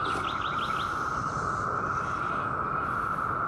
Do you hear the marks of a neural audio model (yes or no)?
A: no